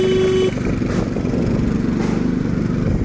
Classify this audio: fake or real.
real